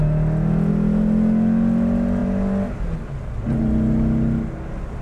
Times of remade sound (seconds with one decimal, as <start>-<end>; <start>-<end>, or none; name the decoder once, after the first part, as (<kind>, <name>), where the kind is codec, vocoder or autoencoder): none